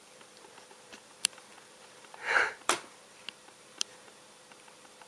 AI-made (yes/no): yes